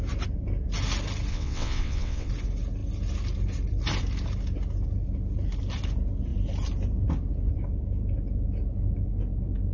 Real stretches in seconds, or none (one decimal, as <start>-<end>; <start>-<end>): 0.0-1.3; 2.3-9.7